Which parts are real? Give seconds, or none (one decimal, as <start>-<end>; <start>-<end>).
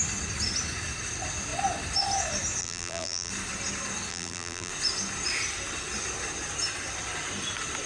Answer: 0.0-2.6; 3.3-4.1; 4.7-7.9